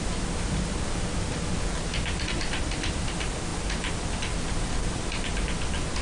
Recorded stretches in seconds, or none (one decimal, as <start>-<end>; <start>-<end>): 0.0-6.0